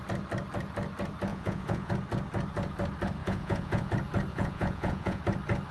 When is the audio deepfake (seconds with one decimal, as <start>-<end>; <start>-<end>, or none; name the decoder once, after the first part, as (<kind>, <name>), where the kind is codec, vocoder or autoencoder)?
1.3-1.9 (vocoder, Vocos); 3.2-3.9; 4.3-5.2